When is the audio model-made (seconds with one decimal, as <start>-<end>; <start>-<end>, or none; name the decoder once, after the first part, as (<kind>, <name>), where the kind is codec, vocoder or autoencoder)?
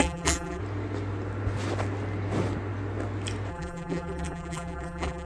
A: 0.0-0.6 (vocoder, BigVGAN v2); 3.5-5.3